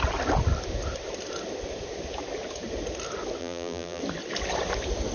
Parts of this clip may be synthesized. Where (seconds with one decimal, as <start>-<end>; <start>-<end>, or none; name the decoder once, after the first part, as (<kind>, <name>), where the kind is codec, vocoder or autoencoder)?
3.4-4.0 (vocoder, BigVGAN v2)